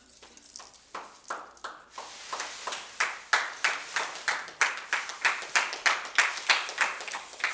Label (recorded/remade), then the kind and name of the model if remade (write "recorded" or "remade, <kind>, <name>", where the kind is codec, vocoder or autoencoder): recorded